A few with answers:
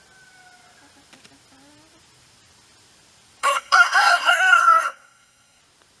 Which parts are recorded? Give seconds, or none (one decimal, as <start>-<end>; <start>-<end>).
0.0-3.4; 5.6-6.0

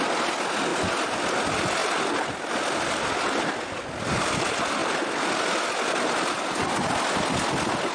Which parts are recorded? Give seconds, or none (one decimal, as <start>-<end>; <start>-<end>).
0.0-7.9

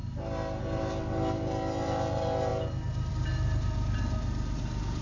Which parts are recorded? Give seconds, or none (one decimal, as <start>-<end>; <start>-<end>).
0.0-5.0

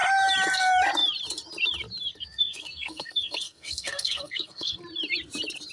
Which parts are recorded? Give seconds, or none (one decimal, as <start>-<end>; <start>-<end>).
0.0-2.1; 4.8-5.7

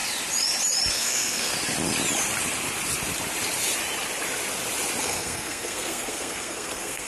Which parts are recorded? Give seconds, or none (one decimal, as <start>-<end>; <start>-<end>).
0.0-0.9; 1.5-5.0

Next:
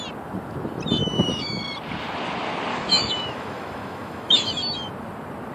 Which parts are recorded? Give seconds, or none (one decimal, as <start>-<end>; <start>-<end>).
0.0-1.0; 1.6-2.7; 4.9-5.5